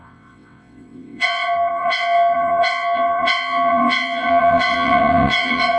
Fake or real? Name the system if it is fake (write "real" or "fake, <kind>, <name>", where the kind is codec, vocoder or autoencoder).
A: fake, vocoder, WaveNeXt